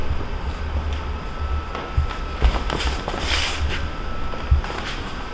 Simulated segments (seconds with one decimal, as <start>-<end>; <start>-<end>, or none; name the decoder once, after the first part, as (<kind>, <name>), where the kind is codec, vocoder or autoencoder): none